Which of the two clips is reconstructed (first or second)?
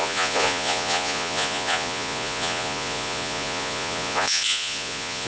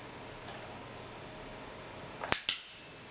first